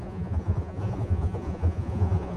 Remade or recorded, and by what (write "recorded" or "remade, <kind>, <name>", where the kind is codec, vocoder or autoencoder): remade, vocoder, Vocos